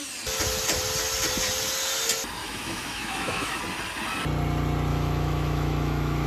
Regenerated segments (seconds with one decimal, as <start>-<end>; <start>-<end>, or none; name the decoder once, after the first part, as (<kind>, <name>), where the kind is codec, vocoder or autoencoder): 2.4-3.6 (autoencoder, DAC-VAE); 4.9-6.3